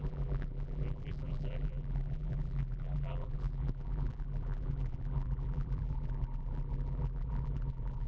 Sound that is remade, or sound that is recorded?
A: remade